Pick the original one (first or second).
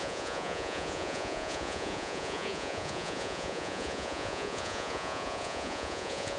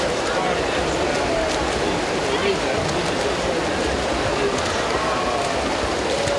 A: second